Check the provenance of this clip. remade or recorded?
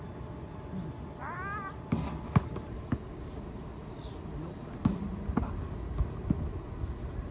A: recorded